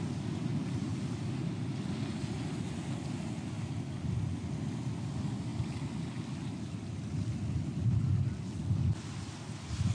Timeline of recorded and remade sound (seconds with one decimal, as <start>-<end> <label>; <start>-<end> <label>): 0.0-9.9 recorded